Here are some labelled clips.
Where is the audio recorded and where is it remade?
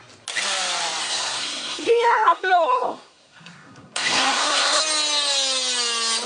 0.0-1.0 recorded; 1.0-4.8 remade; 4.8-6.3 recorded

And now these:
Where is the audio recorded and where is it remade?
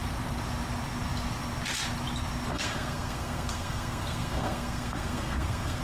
0.0-2.5 recorded; 2.5-5.8 remade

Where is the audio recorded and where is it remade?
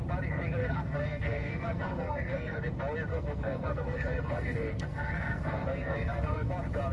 0.0-0.6 recorded; 0.6-2.6 remade; 2.6-3.1 recorded; 3.1-6.5 remade; 6.5-6.9 recorded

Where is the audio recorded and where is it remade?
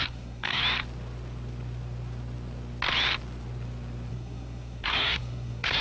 0.0-0.6 remade; 0.6-4.1 recorded; 4.1-5.8 remade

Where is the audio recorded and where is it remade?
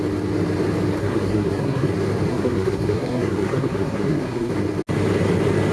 0.0-1.0 recorded; 1.0-1.9 remade; 1.9-2.3 recorded; 2.3-4.5 remade; 4.5-5.7 recorded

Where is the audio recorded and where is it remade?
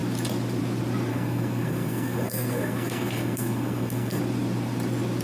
0.0-1.1 recorded; 1.1-4.2 remade; 4.2-5.2 recorded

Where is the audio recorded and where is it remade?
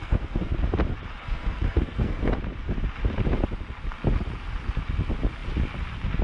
0.0-0.5 remade; 0.5-1.2 recorded; 1.2-2.3 remade; 2.3-6.2 recorded